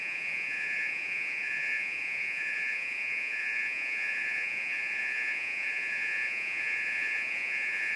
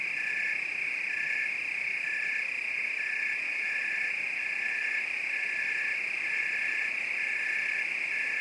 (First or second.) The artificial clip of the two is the first